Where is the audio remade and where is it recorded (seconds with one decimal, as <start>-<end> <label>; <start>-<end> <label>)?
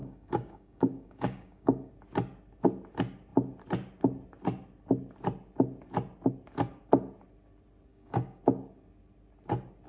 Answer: 0.0-1.9 remade; 1.9-7.9 recorded; 7.9-8.4 remade; 8.4-9.9 recorded